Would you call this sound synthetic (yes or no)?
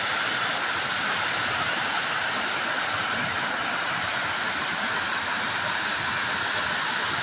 no